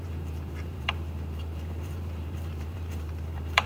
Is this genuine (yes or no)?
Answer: no